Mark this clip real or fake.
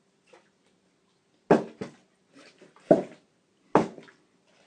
real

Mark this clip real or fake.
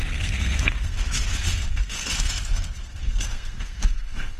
fake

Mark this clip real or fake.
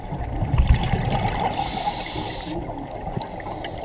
real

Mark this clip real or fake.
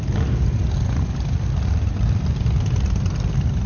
real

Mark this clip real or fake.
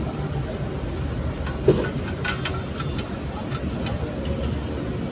real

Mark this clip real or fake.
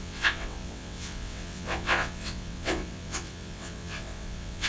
fake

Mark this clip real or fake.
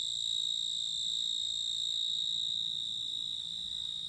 real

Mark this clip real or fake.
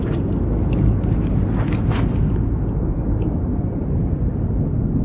real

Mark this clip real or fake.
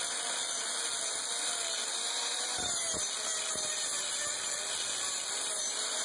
real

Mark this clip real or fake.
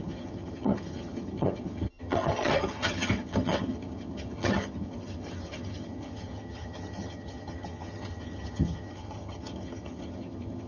fake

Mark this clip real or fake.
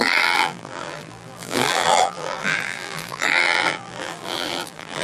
fake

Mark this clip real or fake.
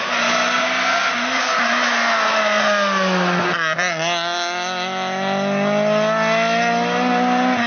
real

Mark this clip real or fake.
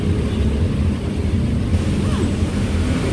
real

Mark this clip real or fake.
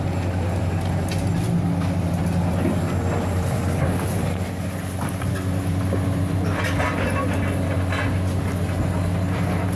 real